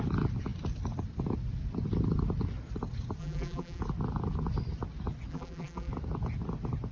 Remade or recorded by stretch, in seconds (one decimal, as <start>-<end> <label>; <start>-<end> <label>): 0.0-3.2 recorded; 3.2-3.8 remade; 3.8-5.3 recorded; 5.3-5.9 remade; 5.9-6.9 recorded